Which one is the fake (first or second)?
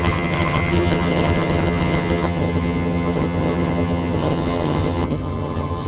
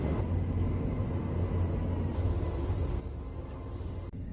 first